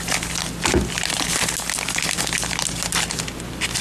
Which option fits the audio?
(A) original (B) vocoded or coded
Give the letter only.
A